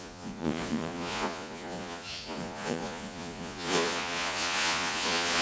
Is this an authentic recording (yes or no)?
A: no